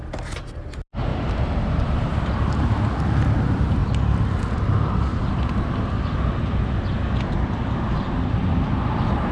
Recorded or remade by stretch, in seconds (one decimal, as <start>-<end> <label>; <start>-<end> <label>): 0.0-1.1 recorded; 1.1-2.3 remade; 2.3-3.8 recorded; 3.8-5.9 remade; 5.9-9.3 recorded